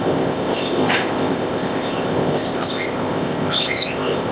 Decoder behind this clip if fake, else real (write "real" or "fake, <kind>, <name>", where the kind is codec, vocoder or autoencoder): fake, codec, ZipCodec